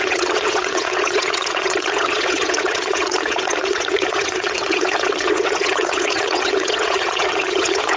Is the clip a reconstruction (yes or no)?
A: yes